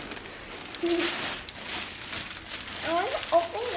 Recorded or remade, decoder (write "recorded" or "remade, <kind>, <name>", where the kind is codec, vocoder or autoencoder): recorded